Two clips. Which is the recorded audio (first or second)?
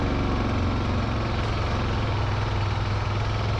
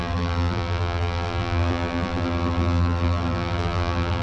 first